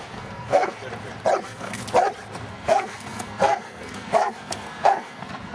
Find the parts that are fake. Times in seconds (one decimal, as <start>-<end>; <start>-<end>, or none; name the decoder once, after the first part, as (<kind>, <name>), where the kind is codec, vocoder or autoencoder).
0.0-0.8 (codec, SNAC); 1.4-1.8; 2.5-5.5